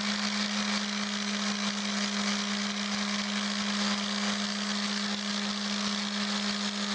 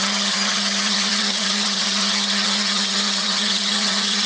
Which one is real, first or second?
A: first